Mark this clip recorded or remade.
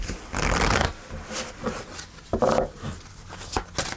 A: recorded